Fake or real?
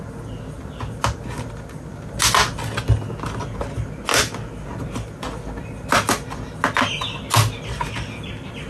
real